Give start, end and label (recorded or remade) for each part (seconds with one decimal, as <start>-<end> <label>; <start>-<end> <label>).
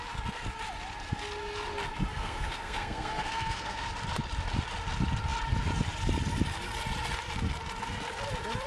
0.0-2.1 recorded; 2.1-3.9 remade; 3.9-8.7 recorded